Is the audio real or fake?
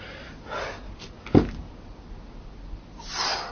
real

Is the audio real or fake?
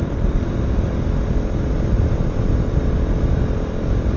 real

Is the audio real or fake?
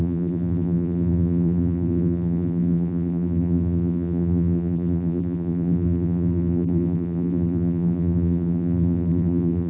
fake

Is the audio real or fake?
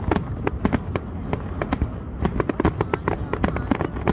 real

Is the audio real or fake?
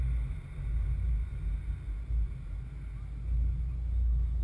real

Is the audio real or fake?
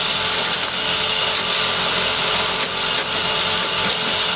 real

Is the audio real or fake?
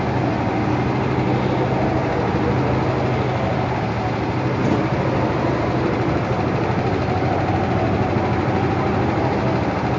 real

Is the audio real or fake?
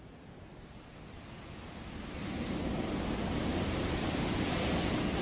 real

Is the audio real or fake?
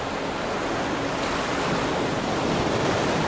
real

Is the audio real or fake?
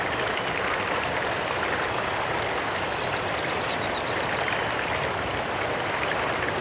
real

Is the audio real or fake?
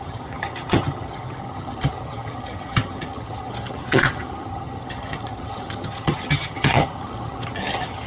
fake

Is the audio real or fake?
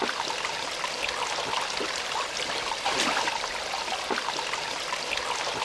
real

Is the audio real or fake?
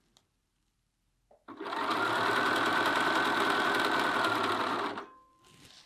real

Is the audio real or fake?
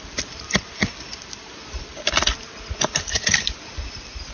fake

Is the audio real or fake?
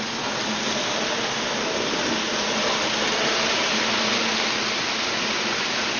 real